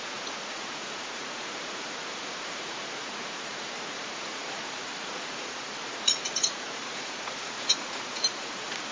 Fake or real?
fake